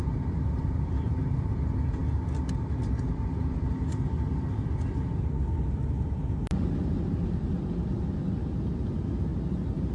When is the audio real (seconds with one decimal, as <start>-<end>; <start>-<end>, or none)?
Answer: 0.0-9.9